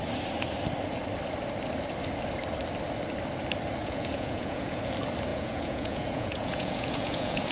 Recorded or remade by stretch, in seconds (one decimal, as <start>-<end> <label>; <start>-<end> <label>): 0.0-3.8 recorded; 3.8-4.8 remade; 4.8-5.3 recorded; 5.3-7.5 remade